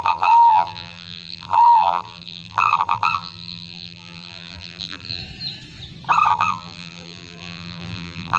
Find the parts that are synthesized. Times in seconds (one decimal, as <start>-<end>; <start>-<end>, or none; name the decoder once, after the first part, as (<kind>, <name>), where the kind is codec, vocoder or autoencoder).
0.0-5.2 (vocoder, BigVGAN v2); 6.3-8.4

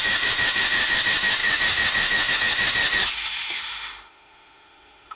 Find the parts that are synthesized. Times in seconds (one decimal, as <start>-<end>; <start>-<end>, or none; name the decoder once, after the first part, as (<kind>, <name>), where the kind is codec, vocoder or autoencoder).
0.0-5.2 (autoencoder, DAC-VAE)

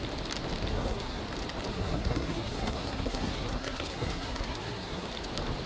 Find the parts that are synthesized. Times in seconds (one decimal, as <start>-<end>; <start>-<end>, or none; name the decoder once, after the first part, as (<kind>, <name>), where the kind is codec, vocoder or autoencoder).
0.7-1.2 (codec, SNAC); 1.7-5.1